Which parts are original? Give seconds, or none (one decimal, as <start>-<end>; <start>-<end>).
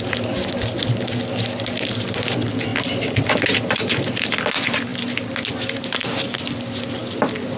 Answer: 0.0-7.6